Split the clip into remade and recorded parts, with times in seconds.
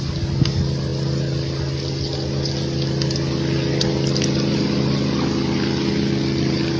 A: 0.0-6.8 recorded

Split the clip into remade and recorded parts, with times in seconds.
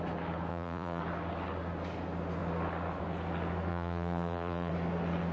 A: 0.0-0.5 recorded; 0.5-1.0 remade; 1.0-3.7 recorded; 3.7-4.7 remade; 4.7-5.3 recorded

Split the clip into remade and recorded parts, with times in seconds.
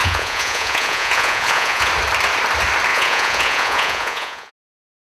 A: 0.0-1.9 remade; 1.9-2.9 recorded; 2.9-4.5 remade; 4.5-5.1 recorded